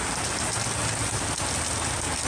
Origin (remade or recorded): recorded